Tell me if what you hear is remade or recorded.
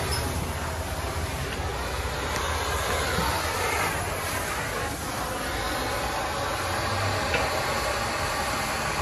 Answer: recorded